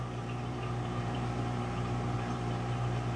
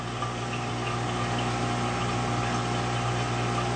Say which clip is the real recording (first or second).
second